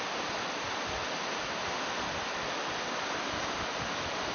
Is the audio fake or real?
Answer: real